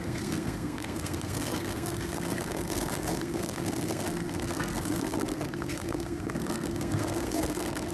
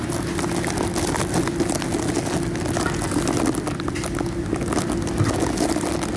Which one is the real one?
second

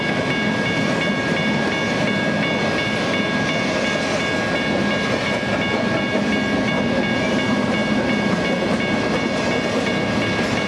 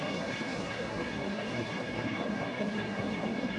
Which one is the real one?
first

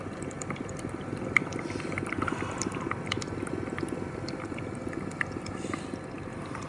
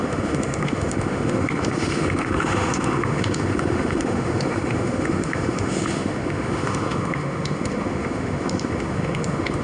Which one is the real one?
first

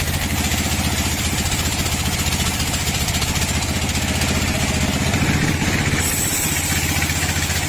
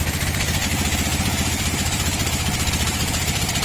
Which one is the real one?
first